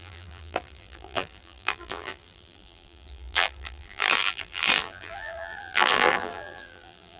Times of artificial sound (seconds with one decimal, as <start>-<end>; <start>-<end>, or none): 0.0-7.2